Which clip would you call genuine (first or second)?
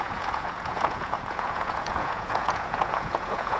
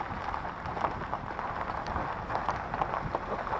second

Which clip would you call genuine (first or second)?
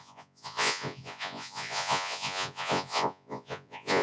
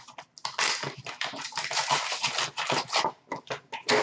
second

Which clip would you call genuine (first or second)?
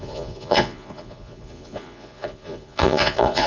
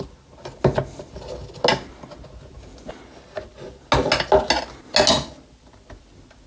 second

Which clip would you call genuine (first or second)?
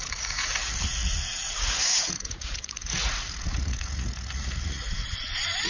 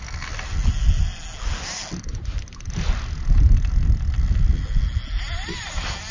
second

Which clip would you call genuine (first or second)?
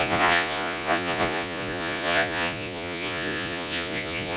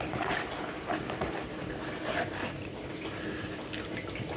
second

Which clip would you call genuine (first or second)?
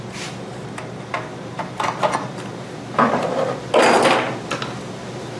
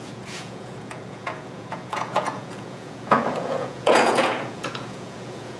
first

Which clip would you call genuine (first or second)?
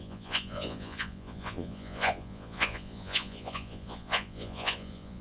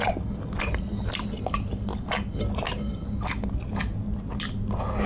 second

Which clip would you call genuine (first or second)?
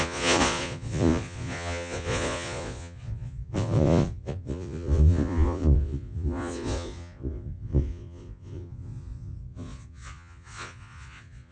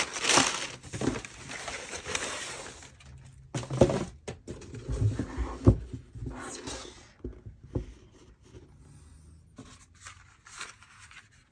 second